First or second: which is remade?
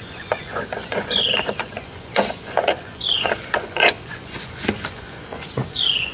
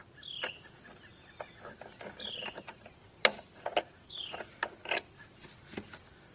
first